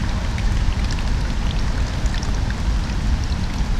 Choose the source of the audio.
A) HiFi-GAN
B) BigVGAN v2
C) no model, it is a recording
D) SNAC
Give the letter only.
C